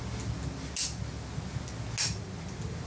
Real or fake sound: real